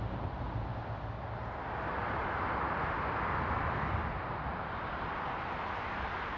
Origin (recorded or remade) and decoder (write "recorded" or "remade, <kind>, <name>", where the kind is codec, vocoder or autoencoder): recorded